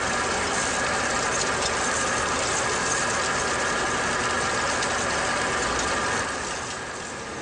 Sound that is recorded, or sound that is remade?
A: recorded